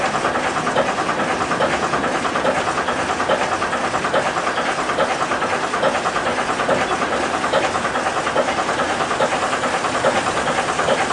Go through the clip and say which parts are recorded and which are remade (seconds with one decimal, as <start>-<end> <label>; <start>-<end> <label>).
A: 0.0-11.1 recorded